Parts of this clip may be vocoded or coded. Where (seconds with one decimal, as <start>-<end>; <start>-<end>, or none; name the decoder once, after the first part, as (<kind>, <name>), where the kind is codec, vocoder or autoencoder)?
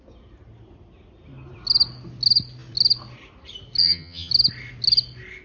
3.8-4.3 (vocoder, HiFi-GAN)